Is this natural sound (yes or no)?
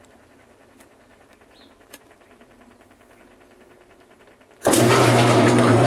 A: no